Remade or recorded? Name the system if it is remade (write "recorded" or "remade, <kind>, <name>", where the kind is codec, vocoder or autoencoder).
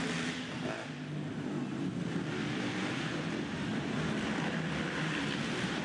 recorded